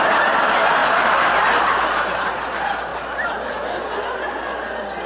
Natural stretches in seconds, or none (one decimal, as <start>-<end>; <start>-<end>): 0.0-5.1